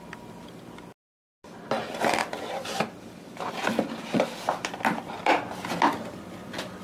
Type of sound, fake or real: real